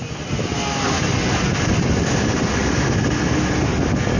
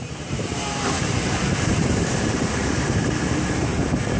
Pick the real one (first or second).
first